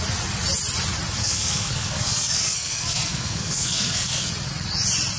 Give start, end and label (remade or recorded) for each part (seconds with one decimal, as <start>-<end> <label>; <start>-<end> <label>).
0.0-1.2 recorded; 1.2-4.3 remade; 4.3-5.2 recorded